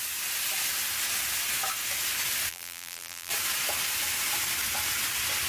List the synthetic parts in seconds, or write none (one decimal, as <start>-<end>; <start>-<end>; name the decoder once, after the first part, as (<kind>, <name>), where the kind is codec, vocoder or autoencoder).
2.5-3.3 (vocoder, BigVGAN v2)